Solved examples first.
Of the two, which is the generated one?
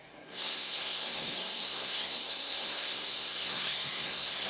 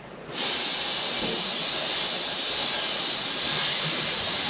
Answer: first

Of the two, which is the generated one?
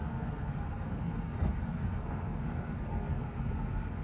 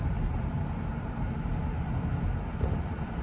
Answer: first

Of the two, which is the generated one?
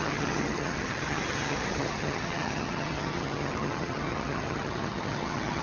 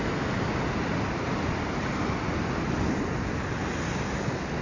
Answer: first